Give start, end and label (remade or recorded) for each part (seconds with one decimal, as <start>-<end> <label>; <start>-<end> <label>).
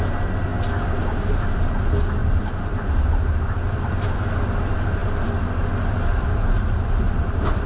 0.0-2.2 recorded; 2.2-3.9 remade; 3.9-7.7 recorded